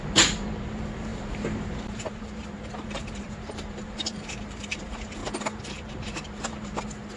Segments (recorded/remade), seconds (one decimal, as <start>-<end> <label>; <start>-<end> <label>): 0.0-5.2 remade; 5.2-5.7 recorded; 5.7-7.2 remade